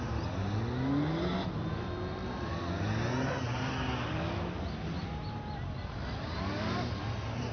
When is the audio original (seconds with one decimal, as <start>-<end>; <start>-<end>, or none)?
0.0-7.5